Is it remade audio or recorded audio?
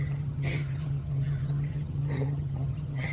remade